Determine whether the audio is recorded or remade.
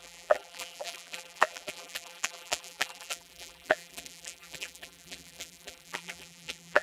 remade